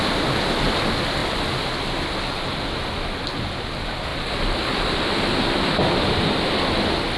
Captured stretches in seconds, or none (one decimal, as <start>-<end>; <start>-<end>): 0.0-4.1; 6.5-7.2